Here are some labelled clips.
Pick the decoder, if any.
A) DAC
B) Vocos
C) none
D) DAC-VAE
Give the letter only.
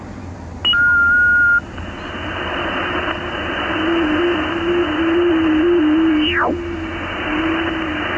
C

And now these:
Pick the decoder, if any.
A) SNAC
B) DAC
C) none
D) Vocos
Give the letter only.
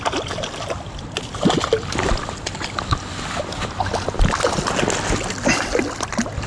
C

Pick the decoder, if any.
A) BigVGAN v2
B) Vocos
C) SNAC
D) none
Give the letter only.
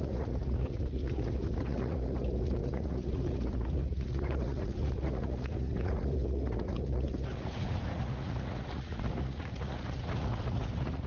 B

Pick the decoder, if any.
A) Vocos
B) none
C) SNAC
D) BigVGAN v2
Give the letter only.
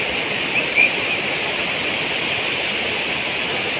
B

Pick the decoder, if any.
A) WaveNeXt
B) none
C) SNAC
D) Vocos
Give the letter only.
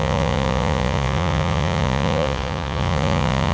D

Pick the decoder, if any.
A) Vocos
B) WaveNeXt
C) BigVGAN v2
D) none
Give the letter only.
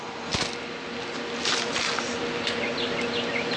D